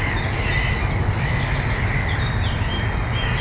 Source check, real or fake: real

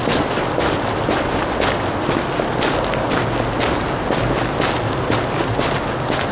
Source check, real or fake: real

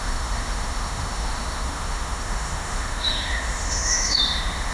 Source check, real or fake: fake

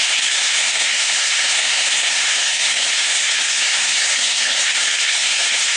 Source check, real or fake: fake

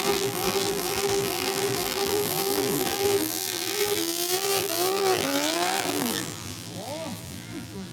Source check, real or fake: fake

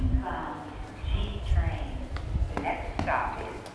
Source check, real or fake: real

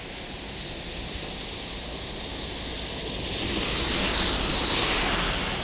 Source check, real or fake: real